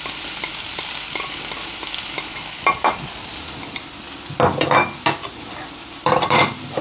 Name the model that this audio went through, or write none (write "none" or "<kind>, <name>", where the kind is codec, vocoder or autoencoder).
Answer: vocoder, BigVGAN v2